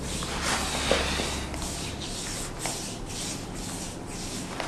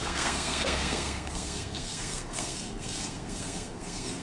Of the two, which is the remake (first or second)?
second